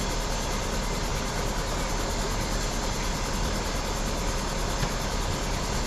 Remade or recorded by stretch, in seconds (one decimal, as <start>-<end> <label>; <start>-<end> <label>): 0.0-5.9 recorded